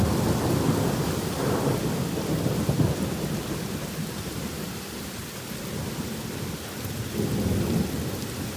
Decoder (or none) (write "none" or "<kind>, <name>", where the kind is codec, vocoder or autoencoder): none